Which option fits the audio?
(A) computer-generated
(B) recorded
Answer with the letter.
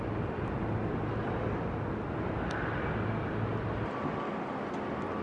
B